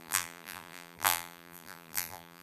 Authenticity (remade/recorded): remade